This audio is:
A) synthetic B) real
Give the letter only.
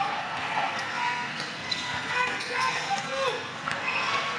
A